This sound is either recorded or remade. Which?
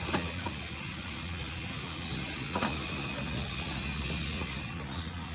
remade